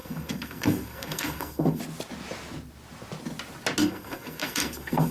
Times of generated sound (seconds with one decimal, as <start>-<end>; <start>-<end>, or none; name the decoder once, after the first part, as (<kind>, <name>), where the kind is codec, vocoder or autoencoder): 0.0-1.8 (codec, SNAC); 3.8-5.1